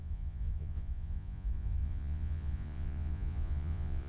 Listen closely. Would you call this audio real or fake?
fake